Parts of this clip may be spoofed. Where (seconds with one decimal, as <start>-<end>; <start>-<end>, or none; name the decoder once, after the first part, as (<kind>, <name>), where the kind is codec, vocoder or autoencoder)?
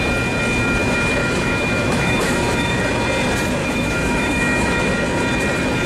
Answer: 0.8-2.8 (autoencoder, DAC-VAE); 3.6-4.9